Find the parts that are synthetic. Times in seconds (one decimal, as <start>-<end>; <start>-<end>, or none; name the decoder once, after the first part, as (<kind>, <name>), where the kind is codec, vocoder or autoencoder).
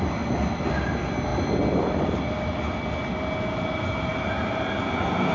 none